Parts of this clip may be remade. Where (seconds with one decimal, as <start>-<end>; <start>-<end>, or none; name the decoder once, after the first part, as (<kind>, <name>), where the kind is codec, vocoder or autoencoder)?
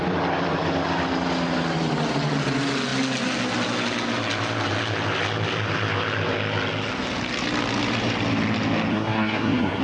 8.9-9.8 (codec, SNAC)